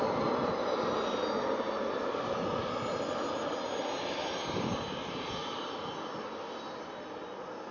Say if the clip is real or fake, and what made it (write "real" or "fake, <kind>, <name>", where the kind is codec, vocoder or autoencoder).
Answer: real